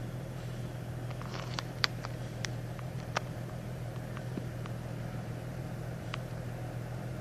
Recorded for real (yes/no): no